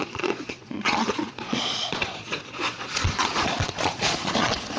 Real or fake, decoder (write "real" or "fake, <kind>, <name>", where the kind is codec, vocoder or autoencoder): fake, vocoder, Vocos